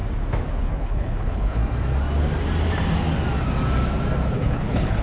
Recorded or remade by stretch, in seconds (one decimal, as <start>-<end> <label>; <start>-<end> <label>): 0.0-0.6 recorded; 0.6-1.6 remade; 1.6-4.3 recorded; 4.3-5.0 remade